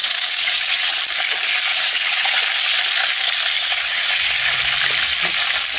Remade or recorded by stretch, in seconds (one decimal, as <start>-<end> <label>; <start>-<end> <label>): 0.0-1.0 remade; 1.0-1.7 recorded; 1.7-2.4 remade; 2.4-3.6 recorded; 3.6-4.3 remade; 4.3-5.8 recorded